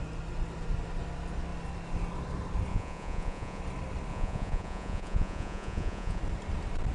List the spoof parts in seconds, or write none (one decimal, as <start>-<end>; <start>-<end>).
2.7-3.6; 4.1-6.2